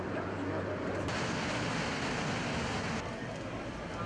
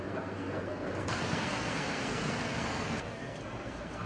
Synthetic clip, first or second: second